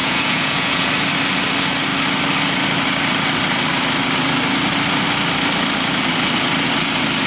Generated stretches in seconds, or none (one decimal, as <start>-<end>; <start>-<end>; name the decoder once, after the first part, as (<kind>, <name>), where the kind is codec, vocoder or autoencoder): 0.0-0.9 (vocoder, Vocos)